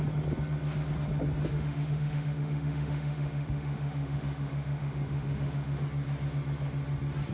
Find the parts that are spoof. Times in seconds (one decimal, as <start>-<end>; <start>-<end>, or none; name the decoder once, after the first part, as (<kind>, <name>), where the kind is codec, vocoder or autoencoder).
1.5-5.8 (autoencoder, DAC-VAE)